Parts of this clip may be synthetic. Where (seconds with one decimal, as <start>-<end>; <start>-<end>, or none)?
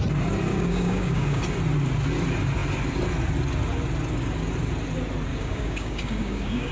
0.5-1.4; 5.3-6.7